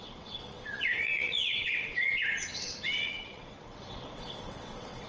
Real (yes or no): no